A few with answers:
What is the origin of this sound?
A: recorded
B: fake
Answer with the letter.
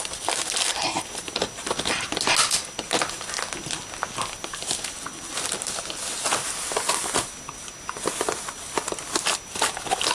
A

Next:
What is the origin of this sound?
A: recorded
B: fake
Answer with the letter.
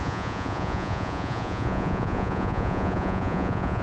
B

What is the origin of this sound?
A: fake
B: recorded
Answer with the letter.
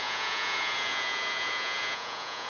A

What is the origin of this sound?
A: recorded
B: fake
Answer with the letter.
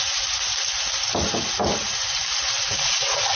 A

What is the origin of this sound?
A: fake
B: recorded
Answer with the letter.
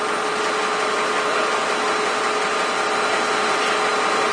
B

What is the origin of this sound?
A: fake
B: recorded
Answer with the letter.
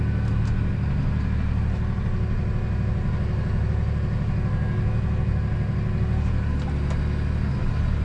B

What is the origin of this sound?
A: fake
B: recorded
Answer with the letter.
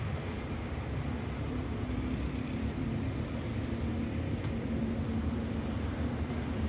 B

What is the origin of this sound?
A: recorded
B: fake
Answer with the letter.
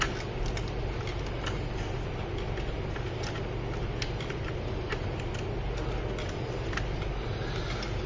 A